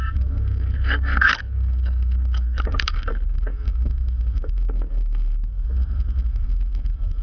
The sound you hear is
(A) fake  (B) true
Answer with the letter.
A